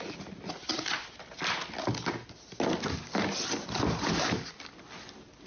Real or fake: real